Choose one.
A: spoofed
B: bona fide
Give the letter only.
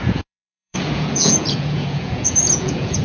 A